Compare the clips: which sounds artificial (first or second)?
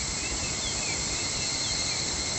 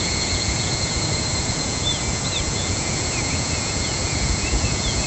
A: second